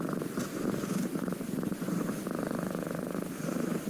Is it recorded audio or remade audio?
remade